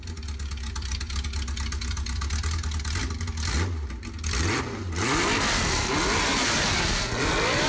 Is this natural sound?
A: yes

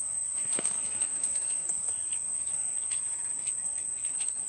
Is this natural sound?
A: no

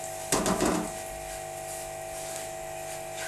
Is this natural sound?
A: yes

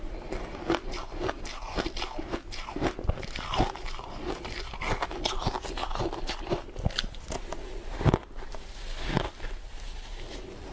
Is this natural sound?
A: yes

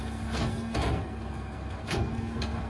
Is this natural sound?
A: no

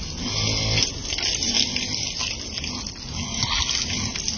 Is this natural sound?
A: yes